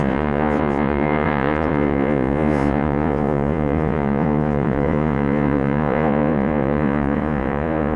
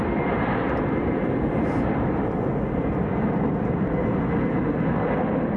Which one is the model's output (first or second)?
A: first